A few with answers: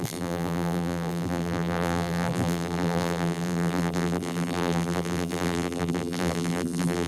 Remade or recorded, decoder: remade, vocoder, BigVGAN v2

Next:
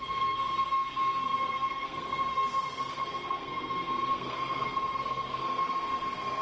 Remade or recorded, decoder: remade, codec, SNAC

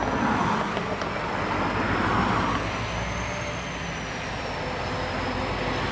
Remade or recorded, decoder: recorded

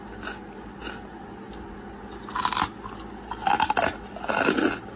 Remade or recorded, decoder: recorded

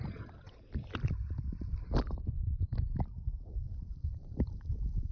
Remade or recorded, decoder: remade, vocoder, BigVGAN v2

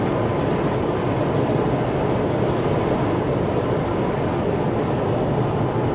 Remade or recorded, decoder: recorded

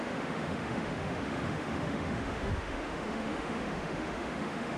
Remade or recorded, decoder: remade, autoencoder, DAC-VAE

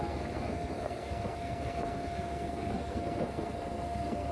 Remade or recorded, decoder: remade, codec, SNAC